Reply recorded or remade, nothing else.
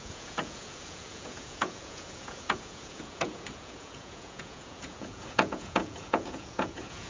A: remade